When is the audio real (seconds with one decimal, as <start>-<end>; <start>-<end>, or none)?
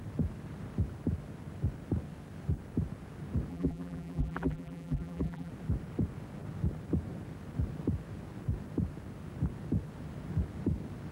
0.0-3.5; 5.5-11.1